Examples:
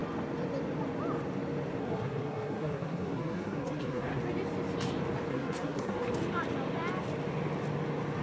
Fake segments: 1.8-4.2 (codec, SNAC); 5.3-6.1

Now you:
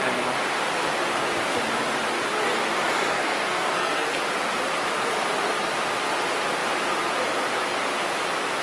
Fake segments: 3.1-4.2 (codec, SNAC)

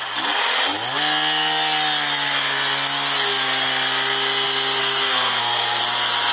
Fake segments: 4.8-5.8 (codec, SNAC)

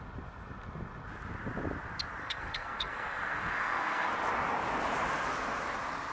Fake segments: 2.2-4.1 (codec, SNAC)

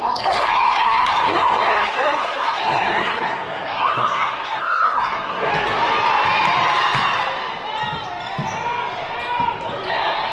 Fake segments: 0.0-5.5 (codec, SNAC); 9.9-10.3

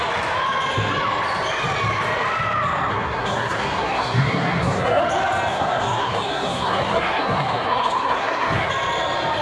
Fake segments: 2.9-5.0 (codec, SNAC); 5.5-8.7